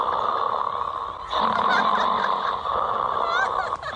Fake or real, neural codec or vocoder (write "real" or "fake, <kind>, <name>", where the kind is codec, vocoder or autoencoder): real